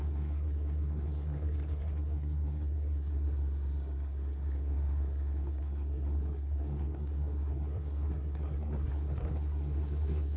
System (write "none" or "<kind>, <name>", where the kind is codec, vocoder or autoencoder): codec, SNAC